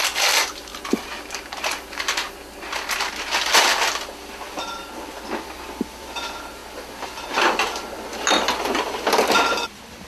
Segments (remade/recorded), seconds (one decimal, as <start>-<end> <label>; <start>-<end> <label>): 0.0-0.7 remade; 0.7-4.1 recorded; 4.1-6.6 remade; 6.6-8.6 recorded; 8.6-10.1 remade